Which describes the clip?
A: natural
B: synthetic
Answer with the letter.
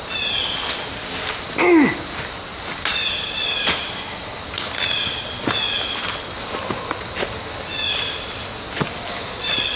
A